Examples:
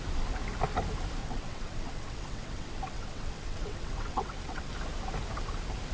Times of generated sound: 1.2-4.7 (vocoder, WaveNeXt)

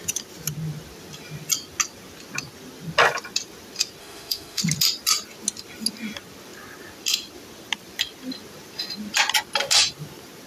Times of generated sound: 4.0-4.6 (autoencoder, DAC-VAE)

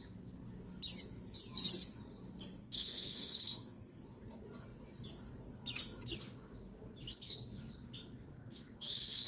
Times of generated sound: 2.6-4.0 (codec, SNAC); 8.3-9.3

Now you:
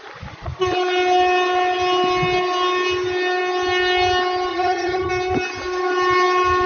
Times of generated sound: 4.5-5.1 (vocoder, HiFi-GAN)

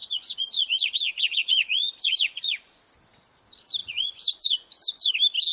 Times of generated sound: 0.0-2.8 (vocoder, Vocos); 3.8-5.1